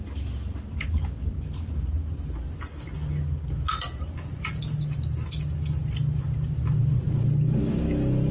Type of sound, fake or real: real